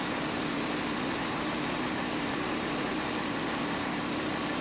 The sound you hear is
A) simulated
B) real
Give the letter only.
A